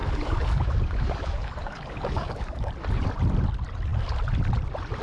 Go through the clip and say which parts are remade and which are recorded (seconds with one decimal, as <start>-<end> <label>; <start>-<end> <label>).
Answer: 0.0-2.7 remade; 2.7-5.0 recorded